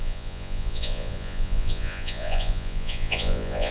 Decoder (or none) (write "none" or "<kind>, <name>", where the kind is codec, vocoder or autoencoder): vocoder, Vocos